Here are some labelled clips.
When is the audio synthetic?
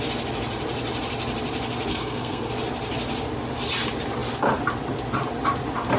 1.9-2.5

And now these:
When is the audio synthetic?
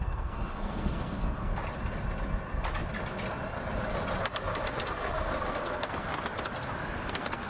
0.0-1.5; 5.5-6.1; 7.1-7.5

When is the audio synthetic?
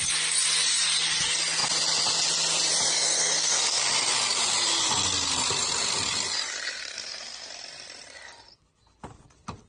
2.9-3.8; 6.8-7.5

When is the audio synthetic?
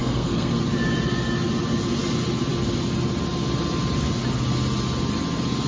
0.0-0.6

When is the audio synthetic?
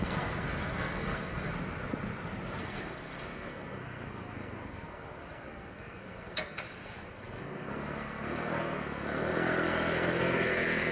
0.0-1.5; 2.6-10.9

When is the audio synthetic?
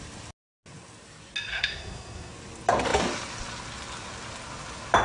1.5-2.3